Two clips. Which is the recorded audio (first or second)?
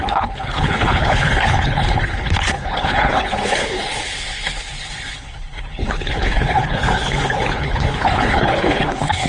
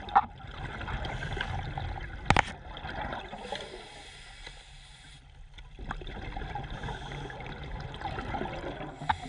second